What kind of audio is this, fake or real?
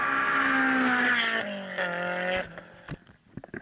real